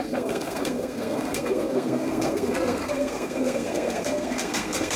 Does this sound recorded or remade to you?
remade